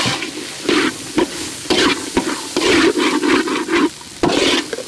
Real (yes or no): yes